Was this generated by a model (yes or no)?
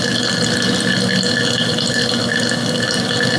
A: no